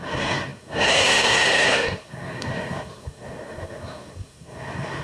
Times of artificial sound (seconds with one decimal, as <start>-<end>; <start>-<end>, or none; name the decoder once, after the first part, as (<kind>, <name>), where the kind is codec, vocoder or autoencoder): 0.0-5.0 (codec, SNAC)